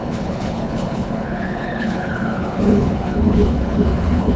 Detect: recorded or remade remade